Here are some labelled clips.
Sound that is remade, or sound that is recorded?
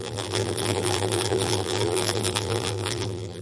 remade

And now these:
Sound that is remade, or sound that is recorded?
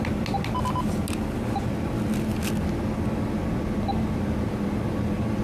recorded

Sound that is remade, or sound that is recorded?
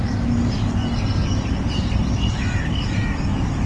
recorded